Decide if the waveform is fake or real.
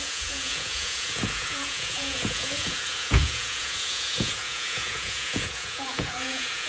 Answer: fake